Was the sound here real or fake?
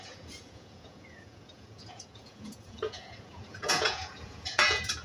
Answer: fake